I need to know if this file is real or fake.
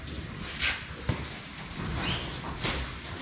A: real